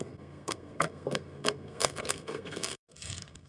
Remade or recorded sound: remade